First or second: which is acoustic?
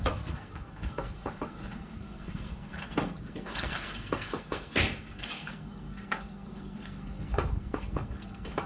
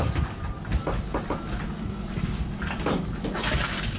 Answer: second